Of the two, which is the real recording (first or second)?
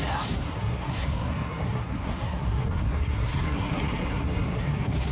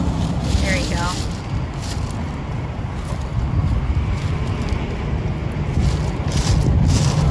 second